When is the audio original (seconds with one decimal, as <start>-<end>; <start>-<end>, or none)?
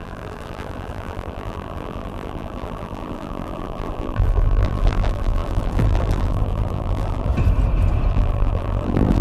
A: 7.3-8.1